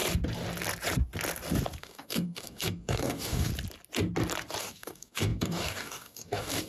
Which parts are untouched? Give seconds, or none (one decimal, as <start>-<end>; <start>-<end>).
0.0-1.8; 3.5-4.6